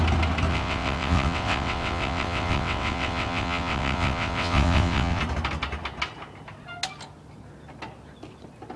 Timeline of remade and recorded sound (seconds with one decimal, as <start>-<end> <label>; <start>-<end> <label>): 0.0-0.5 recorded; 0.5-5.2 remade; 5.2-8.8 recorded